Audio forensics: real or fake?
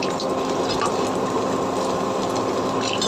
real